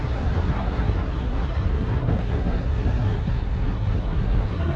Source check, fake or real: fake